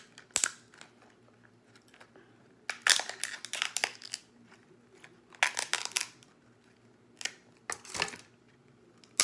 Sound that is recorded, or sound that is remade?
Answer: recorded